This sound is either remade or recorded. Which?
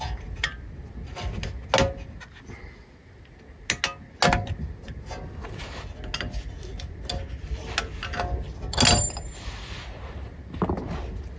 recorded